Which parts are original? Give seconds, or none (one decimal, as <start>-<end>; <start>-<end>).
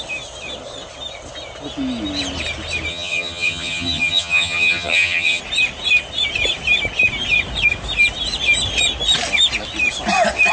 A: 0.0-2.9; 5.4-10.5